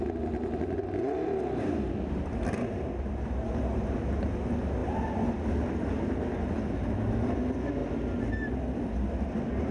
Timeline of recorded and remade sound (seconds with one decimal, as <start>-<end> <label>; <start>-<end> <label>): 0.0-9.7 recorded

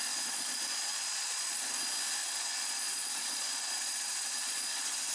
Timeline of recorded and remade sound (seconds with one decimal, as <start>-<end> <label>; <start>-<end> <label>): 0.0-1.7 remade; 1.7-2.2 recorded; 2.2-5.1 remade

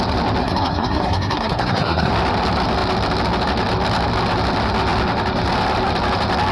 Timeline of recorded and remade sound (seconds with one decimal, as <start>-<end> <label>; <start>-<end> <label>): 0.0-0.4 recorded; 0.4-2.1 remade; 2.1-6.5 recorded

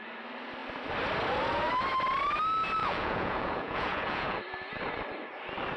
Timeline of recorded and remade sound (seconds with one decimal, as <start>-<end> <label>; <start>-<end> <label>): 0.0-2.8 recorded; 2.8-4.4 remade; 4.4-5.8 recorded

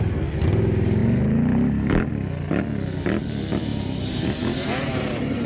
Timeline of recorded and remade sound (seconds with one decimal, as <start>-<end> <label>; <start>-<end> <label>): 0.0-3.7 recorded; 3.7-5.5 remade

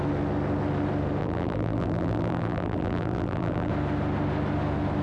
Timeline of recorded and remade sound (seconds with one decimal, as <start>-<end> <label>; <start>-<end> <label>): 0.0-1.2 recorded; 1.2-3.7 remade; 3.7-5.0 recorded

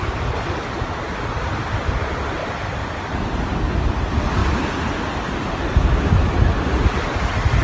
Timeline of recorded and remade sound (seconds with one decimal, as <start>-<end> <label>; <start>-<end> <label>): 0.0-7.6 recorded

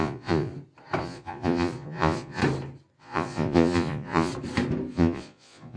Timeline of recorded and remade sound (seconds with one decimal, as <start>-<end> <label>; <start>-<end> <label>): 0.0-0.5 remade; 0.5-1.0 recorded; 1.0-2.4 remade; 2.4-3.0 recorded; 3.0-4.3 remade; 4.3-4.9 recorded; 4.9-5.8 remade